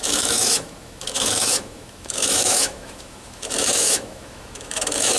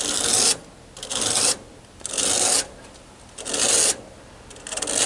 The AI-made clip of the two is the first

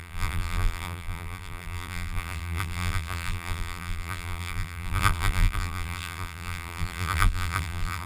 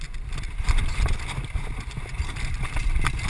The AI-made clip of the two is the first